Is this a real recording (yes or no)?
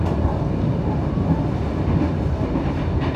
yes